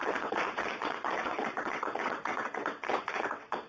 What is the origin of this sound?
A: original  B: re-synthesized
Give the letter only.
B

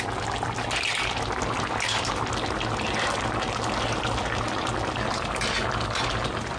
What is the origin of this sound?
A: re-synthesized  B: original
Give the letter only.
B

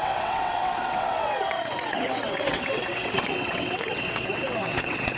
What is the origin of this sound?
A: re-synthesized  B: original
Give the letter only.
A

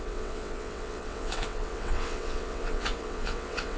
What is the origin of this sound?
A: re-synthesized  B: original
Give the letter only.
A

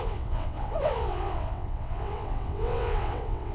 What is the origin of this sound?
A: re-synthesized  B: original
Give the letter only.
A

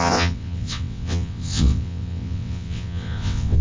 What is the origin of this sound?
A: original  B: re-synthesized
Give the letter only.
B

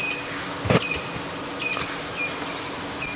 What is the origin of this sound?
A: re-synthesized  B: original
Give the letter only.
B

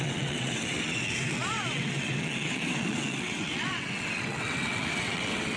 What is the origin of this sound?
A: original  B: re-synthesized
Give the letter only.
B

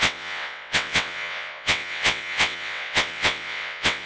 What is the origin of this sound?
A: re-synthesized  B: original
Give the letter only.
A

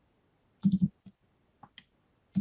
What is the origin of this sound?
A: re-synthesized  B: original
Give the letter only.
B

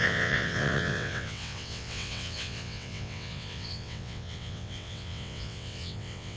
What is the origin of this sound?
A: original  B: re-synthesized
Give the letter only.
B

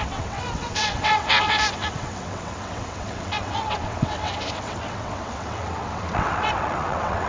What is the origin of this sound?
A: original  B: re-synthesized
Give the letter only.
B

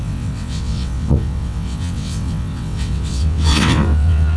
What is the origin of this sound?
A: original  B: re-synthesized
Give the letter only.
B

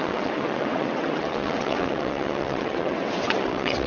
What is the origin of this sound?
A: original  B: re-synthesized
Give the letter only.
B